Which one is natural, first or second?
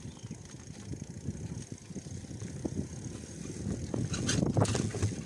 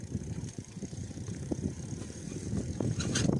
first